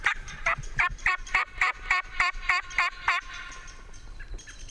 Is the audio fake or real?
fake